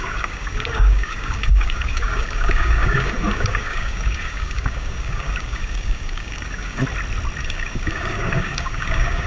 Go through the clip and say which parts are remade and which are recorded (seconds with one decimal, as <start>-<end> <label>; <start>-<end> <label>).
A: 0.0-6.8 remade; 6.8-7.4 recorded; 7.4-9.3 remade